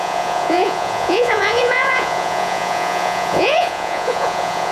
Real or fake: fake